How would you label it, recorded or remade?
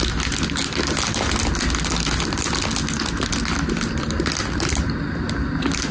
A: recorded